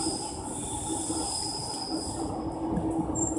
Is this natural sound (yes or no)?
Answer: yes